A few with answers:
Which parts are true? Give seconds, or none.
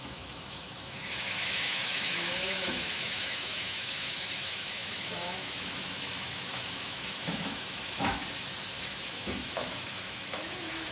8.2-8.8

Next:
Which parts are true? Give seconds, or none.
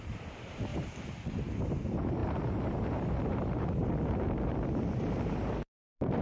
0.7-1.3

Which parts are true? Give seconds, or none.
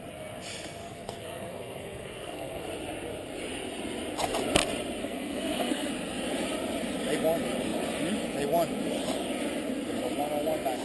0.0-0.8; 2.7-5.0; 5.9-10.8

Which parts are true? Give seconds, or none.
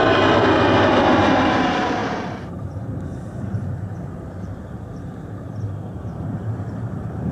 none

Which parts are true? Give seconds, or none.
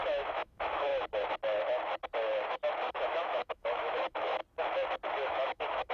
0.9-2.9; 4.4-5.1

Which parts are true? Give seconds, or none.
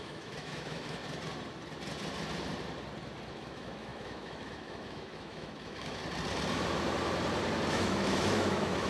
1.0-3.3; 6.0-7.7